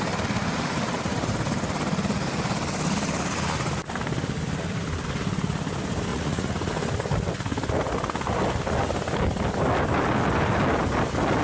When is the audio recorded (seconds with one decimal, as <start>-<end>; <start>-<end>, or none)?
0.0-6.1; 6.7-11.4